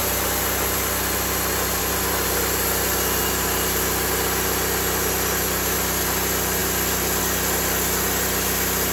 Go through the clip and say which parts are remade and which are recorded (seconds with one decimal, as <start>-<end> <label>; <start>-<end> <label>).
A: 0.0-8.9 recorded